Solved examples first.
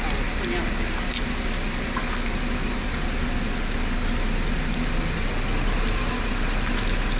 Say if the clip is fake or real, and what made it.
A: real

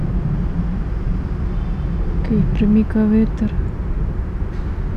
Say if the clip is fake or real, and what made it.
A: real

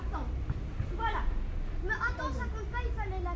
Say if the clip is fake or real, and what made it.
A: real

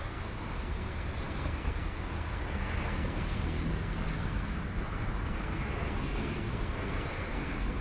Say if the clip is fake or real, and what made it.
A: fake, codec, SNAC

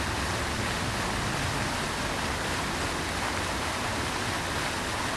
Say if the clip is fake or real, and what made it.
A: real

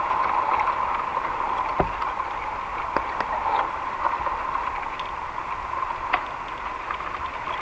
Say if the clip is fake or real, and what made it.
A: real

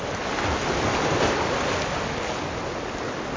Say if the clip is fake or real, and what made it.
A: real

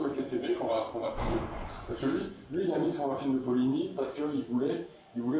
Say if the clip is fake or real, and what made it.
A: fake, vocoder, Vocos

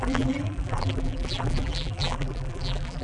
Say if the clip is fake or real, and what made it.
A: fake, vocoder, BigVGAN v2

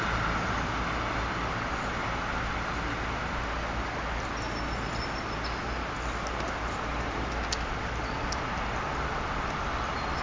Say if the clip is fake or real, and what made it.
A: real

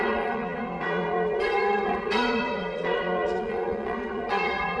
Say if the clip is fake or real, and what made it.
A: fake, vocoder, Vocos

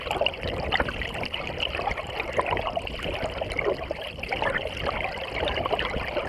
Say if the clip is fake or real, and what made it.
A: real